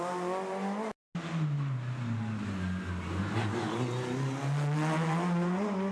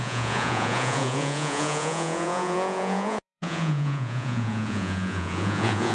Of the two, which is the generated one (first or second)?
second